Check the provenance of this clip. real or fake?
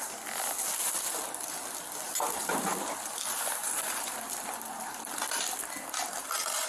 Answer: real